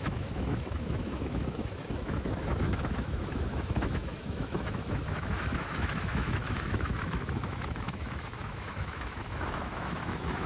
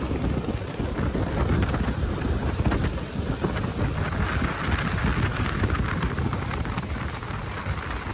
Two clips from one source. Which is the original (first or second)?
second